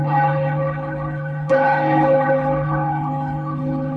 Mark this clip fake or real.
fake